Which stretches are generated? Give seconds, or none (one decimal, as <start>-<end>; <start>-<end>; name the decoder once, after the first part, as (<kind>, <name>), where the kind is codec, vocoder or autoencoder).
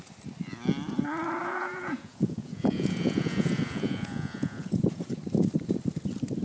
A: 1.4-5.2 (vocoder, Vocos)